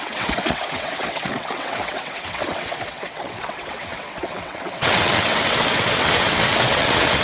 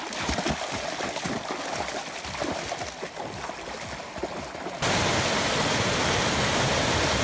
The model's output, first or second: first